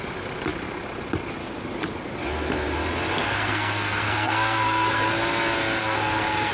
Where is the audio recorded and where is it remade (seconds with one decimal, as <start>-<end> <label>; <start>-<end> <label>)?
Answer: 0.0-3.2 recorded; 3.2-5.0 remade; 5.0-5.8 recorded; 5.8-6.5 remade